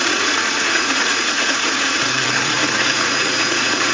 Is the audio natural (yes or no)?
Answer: no